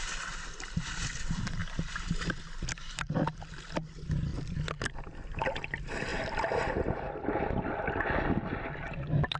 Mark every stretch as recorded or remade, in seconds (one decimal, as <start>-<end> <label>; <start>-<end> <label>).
0.0-4.3 recorded; 4.3-5.0 remade; 5.0-6.1 recorded; 6.1-7.3 remade; 7.3-9.4 recorded